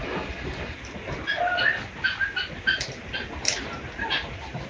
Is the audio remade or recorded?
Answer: recorded